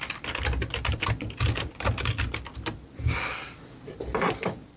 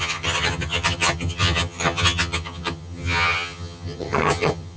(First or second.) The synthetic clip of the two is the second